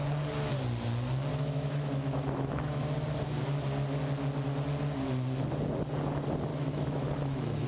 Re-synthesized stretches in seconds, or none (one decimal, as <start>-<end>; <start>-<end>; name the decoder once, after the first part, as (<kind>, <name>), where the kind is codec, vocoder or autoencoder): 1.3-2.8 (autoencoder, DAC-VAE); 6.5-7.7